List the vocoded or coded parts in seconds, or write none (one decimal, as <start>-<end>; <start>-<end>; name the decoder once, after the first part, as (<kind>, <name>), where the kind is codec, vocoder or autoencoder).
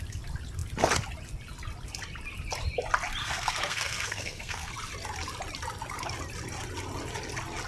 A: 3.2-4.7 (codec, SNAC)